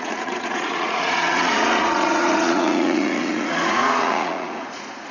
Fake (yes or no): yes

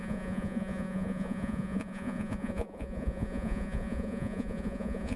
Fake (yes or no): yes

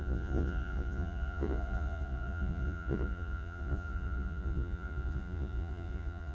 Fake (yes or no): yes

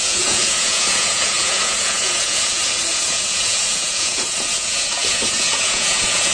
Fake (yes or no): yes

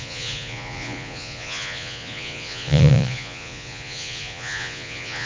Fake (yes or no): yes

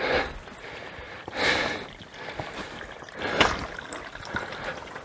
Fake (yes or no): no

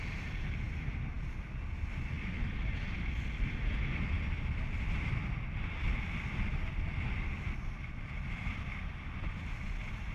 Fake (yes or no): no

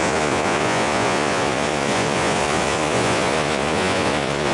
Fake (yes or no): yes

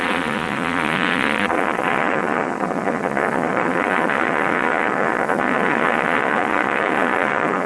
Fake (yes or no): yes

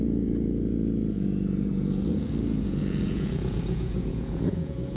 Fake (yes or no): yes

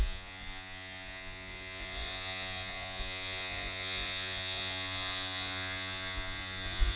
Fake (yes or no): yes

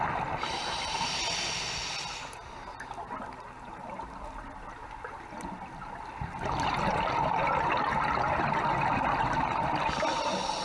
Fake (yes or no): no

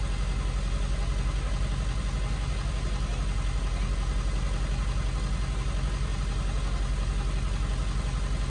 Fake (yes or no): no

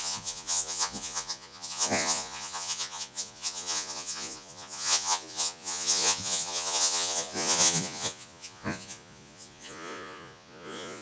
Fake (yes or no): yes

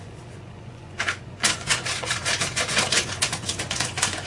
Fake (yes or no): yes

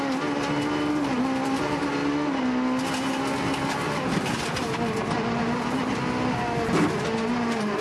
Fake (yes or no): no